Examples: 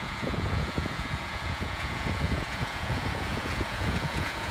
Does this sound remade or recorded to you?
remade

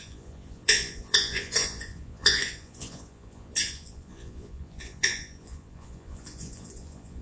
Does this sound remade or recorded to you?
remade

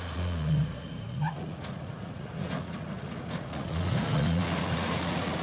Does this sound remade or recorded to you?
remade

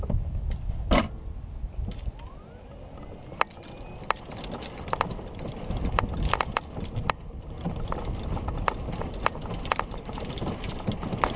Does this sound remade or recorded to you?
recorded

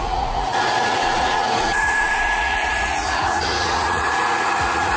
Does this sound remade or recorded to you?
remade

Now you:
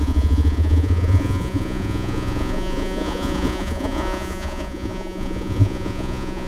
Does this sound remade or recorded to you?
remade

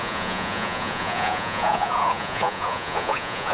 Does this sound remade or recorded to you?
remade